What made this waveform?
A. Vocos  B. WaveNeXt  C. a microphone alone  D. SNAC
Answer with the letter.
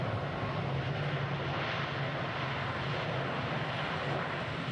C